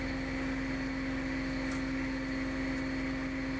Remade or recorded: recorded